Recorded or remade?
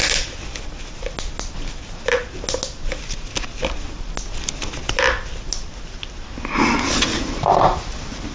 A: recorded